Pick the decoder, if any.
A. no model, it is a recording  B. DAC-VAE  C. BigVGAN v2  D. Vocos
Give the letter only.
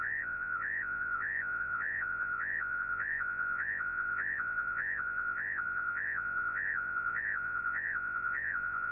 D